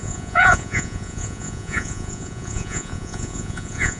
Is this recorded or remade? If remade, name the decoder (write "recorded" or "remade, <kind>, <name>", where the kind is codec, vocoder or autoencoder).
remade, vocoder, Vocos